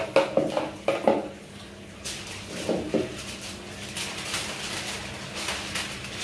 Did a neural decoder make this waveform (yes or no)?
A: no